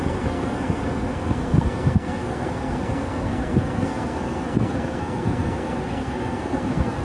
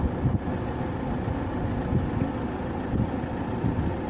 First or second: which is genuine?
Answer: second